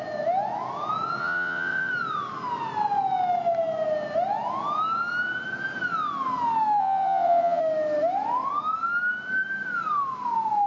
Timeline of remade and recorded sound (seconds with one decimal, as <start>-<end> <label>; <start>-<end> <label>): 0.0-1.2 recorded; 1.2-1.9 remade; 1.9-6.8 recorded; 6.8-7.6 remade; 7.6-10.7 recorded